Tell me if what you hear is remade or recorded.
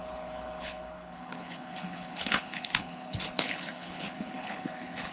remade